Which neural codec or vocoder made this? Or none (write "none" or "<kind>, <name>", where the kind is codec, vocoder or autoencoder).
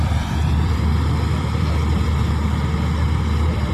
vocoder, BigVGAN v2